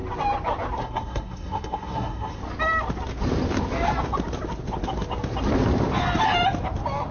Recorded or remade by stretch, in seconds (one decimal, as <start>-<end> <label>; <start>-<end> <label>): 0.0-0.8 recorded; 0.8-2.4 remade; 2.4-7.1 recorded